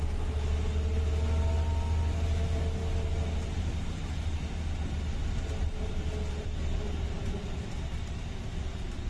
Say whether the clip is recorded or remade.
recorded